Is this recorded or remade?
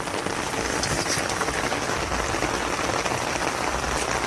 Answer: recorded